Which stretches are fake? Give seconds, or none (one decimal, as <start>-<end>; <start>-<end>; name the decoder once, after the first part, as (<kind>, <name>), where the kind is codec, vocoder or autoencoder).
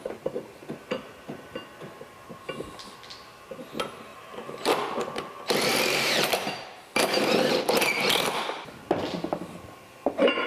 4.1-4.8 (vocoder, BigVGAN v2); 5.7-7.8